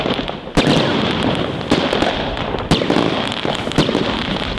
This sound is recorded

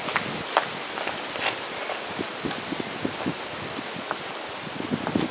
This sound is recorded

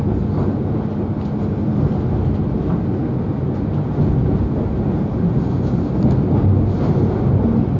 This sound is recorded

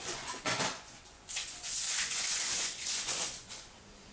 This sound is remade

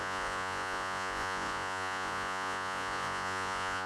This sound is remade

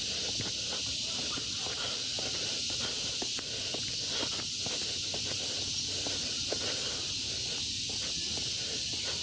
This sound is recorded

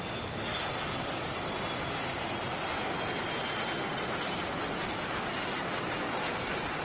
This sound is recorded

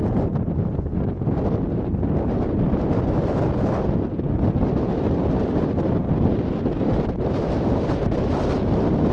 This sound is recorded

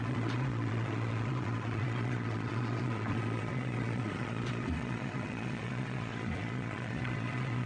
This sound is remade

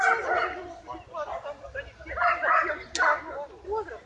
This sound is recorded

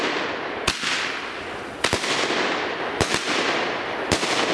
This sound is recorded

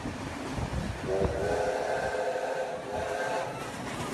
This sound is recorded